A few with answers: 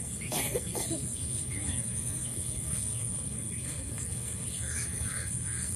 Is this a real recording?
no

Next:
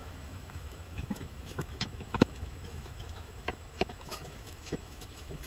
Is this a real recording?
no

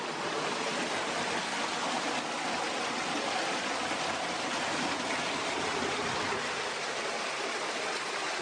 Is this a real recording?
yes